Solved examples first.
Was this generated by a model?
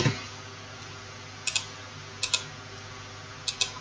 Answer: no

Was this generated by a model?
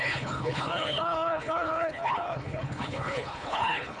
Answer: yes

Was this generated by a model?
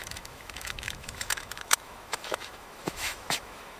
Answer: yes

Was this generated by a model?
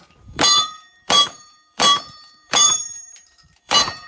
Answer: yes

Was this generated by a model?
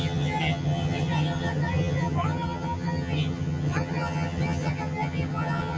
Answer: yes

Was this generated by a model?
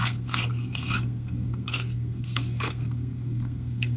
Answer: yes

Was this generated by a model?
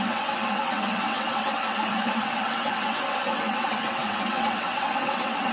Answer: yes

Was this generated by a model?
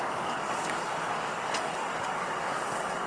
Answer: yes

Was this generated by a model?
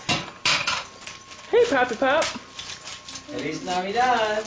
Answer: no